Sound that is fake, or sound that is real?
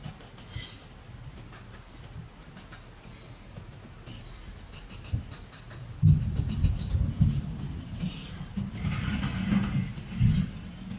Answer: real